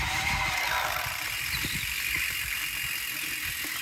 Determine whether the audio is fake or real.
real